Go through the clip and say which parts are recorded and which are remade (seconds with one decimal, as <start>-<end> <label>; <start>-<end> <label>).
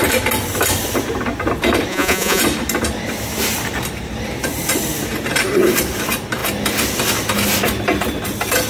0.0-1.9 recorded; 1.9-2.4 remade; 2.4-8.7 recorded